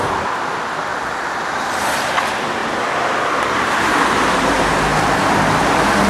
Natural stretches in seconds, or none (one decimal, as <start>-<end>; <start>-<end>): 0.0-0.9; 1.7-2.6; 3.7-6.1